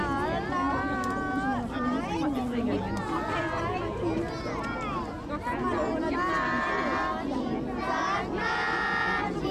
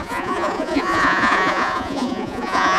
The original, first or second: first